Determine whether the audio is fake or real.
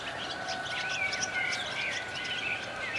real